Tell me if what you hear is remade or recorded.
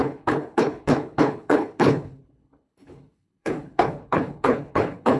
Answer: remade